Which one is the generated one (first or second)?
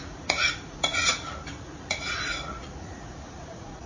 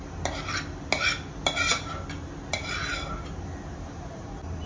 first